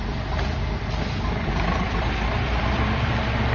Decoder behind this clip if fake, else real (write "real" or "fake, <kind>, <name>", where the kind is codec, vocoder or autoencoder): fake, vocoder, BigVGAN v2